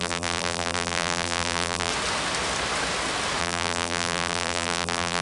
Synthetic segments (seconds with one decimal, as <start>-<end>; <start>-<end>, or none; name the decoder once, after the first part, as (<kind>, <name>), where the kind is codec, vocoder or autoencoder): 0.0-1.9 (vocoder, BigVGAN v2); 3.4-5.2